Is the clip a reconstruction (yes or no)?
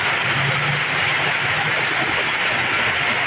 no